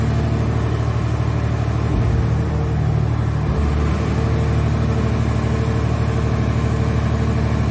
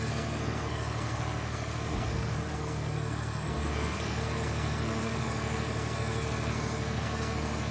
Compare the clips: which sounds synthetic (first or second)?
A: second